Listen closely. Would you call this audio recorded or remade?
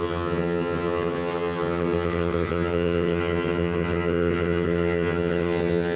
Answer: remade